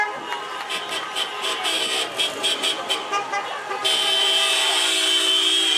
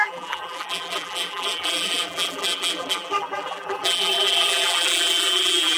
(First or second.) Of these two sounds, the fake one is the second